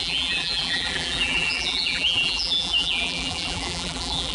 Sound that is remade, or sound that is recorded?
remade